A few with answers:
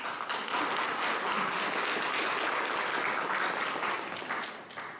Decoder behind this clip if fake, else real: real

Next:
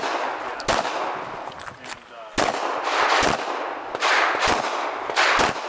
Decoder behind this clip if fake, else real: real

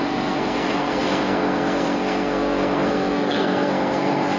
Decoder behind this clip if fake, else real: fake, codec, SNAC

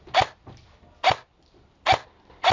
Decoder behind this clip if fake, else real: real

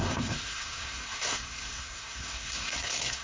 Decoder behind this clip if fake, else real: fake, codec, SNAC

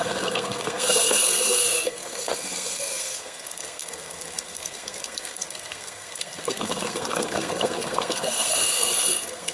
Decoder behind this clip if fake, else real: fake, codec, SNAC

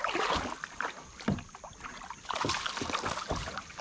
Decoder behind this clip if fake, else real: real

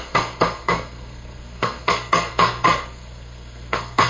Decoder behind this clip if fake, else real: fake, codec, SNAC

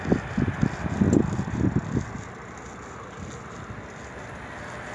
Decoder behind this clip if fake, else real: real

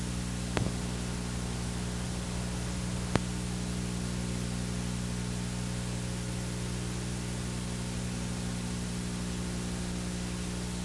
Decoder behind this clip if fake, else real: real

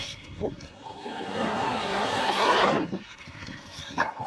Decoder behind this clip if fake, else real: fake, codec, SNAC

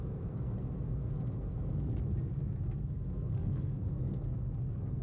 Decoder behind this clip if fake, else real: fake, codec, SNAC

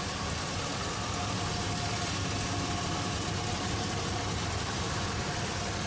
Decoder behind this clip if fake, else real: real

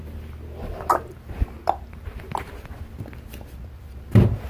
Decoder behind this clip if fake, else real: real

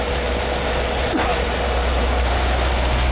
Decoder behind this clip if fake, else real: real